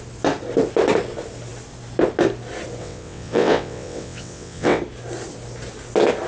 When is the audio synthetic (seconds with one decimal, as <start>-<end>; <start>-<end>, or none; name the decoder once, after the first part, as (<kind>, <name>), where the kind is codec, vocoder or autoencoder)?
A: 2.8-4.8 (vocoder, WaveNeXt)